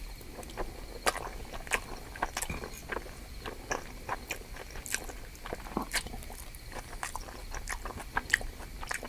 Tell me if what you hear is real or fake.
real